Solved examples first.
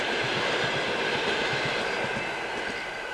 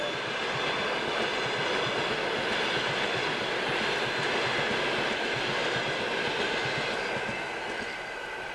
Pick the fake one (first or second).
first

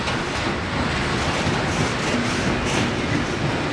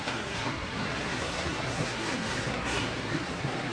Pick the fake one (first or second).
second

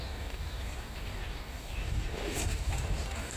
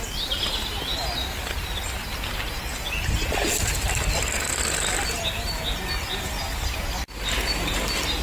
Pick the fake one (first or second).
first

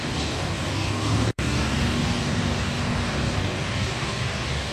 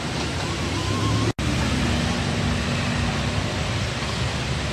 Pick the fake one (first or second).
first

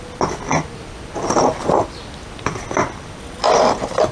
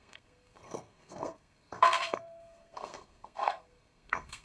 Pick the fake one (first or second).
second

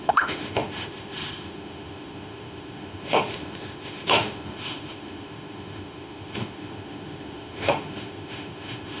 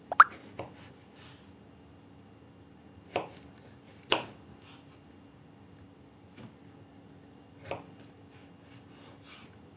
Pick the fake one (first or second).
first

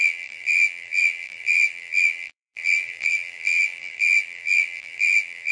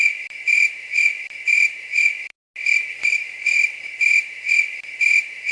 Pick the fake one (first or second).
first